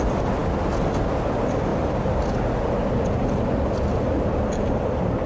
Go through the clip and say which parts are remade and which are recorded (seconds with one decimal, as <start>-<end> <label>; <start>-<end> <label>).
0.0-5.3 recorded